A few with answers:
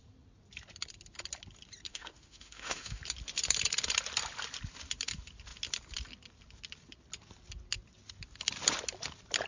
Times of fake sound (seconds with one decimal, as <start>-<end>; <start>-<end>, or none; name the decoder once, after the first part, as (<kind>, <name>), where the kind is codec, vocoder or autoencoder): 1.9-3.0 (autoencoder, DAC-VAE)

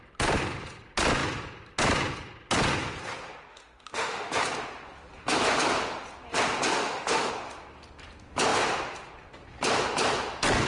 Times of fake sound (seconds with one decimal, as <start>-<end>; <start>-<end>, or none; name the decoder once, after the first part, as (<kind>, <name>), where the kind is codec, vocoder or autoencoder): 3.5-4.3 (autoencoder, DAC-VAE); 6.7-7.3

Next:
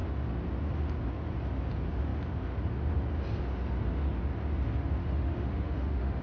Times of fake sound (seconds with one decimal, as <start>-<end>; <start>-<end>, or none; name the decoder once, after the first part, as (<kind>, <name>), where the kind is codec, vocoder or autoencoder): 5.0-6.2 (autoencoder, DAC-VAE)

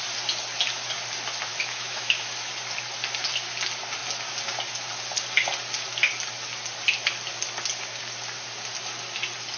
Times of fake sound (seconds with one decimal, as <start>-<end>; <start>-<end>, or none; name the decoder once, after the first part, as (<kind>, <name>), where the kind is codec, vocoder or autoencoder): 1.5-2.5 (autoencoder, DAC-VAE)

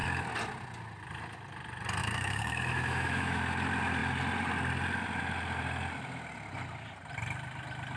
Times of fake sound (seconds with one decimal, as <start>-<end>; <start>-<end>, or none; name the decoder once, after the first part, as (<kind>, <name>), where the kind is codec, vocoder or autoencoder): 2.0-3.4 (autoencoder, DAC-VAE)

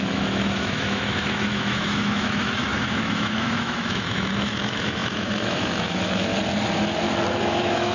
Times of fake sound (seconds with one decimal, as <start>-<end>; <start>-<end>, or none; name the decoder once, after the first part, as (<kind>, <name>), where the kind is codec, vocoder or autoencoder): 0.0-6.3 (autoencoder, DAC-VAE); 7.3-7.9

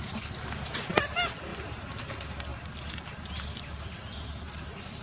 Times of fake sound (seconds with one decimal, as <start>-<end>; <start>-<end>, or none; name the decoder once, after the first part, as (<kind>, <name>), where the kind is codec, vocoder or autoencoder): none